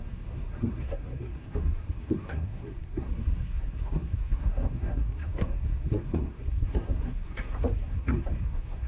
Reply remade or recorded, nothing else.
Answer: remade